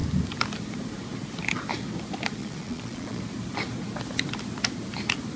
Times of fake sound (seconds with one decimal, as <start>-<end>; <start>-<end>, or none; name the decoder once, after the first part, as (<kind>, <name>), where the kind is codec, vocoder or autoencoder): 2.4-3.2 (vocoder, Vocos)